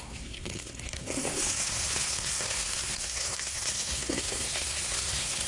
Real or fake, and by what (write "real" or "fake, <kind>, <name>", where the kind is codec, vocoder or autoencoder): fake, codec, SNAC